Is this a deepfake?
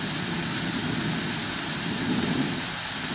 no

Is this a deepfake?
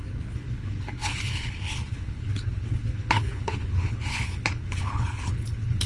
yes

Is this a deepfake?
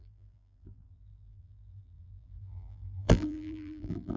yes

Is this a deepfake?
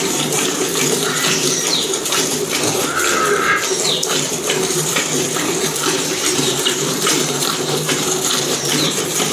yes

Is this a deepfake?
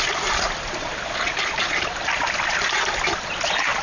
no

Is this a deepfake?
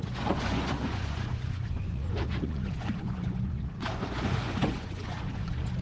yes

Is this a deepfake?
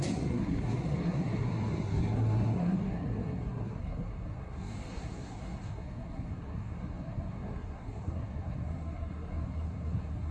yes